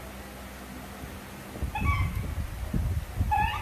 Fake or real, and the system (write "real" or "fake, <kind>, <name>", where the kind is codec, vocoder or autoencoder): real